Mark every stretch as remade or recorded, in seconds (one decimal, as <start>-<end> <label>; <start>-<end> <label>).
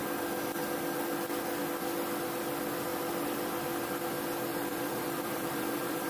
0.0-4.5 recorded; 4.5-6.1 remade